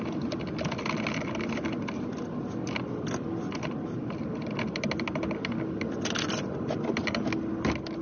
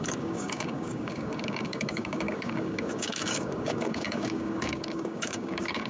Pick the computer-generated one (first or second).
second